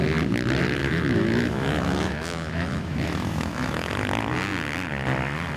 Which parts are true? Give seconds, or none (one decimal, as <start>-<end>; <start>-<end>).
0.0-0.8; 3.9-5.6